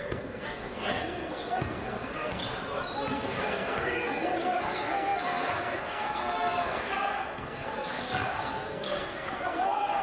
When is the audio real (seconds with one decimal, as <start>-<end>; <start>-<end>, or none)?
2.4-3.1